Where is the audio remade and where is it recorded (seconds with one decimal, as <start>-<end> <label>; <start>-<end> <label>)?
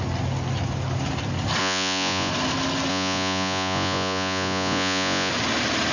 0.0-1.6 recorded; 1.6-2.3 remade; 2.3-2.9 recorded; 2.9-5.3 remade; 5.3-5.9 recorded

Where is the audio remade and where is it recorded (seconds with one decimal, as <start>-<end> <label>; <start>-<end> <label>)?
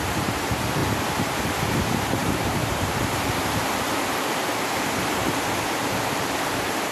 0.0-0.8 remade; 0.8-1.4 recorded; 1.4-6.9 remade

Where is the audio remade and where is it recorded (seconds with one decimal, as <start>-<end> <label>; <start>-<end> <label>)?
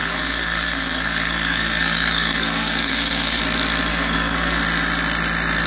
0.0-3.4 remade; 3.4-3.9 recorded; 3.9-4.6 remade; 4.6-5.7 recorded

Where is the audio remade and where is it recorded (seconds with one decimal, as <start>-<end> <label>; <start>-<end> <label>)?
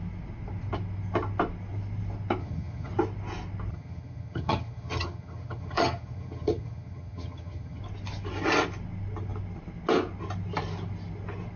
0.0-2.4 recorded; 2.4-2.9 remade; 2.9-3.7 recorded; 3.7-7.8 remade; 7.8-11.6 recorded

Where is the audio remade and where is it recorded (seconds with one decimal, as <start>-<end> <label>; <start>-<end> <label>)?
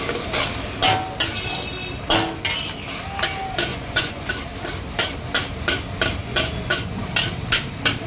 0.0-3.7 recorded; 3.7-4.3 remade; 4.3-6.2 recorded; 6.2-7.0 remade; 7.0-8.1 recorded